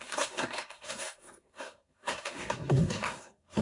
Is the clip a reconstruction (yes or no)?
yes